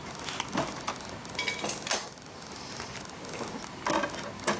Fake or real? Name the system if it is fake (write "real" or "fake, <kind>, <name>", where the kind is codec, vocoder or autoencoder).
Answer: real